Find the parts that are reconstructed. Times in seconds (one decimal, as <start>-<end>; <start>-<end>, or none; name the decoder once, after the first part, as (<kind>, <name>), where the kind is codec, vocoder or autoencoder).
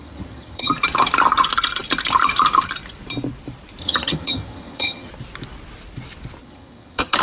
0.0-0.7 (vocoder, HiFi-GAN); 3.8-5.1; 6.4-7.2